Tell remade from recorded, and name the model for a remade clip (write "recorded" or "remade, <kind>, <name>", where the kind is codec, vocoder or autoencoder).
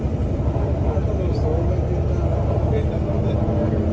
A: recorded